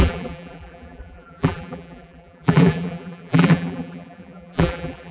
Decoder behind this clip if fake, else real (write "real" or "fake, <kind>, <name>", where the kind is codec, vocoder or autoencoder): fake, vocoder, BigVGAN v2